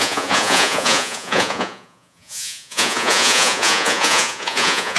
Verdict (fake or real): fake